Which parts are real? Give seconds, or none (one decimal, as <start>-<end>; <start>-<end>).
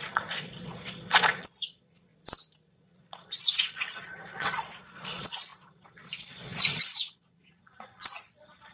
2.1-2.7